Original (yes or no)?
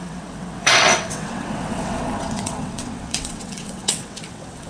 no